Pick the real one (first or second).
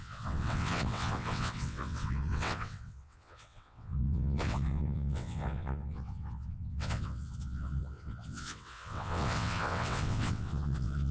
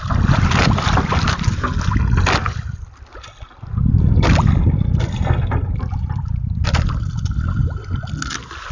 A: second